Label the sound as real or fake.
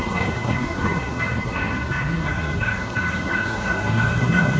fake